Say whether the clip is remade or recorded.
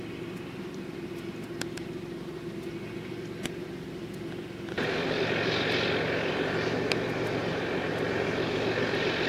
recorded